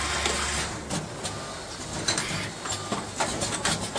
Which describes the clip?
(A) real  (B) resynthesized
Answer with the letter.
A